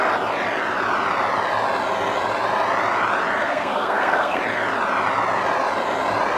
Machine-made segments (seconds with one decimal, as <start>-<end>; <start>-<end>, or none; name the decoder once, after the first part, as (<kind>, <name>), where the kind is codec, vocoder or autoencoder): 3.4-4.4 (codec, SNAC)